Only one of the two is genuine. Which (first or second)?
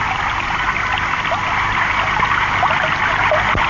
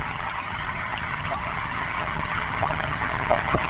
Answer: first